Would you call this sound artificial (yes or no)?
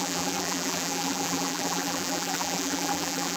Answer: yes